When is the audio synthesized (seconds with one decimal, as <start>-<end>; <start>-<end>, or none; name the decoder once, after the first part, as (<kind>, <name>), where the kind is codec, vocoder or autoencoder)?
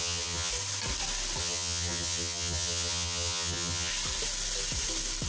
0.0-0.5 (vocoder, HiFi-GAN); 1.4-3.9